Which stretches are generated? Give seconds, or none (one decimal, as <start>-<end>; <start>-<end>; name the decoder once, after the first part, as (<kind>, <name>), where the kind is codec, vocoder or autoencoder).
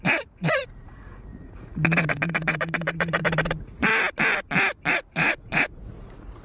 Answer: 0.0-3.9 (vocoder, Vocos); 4.9-6.4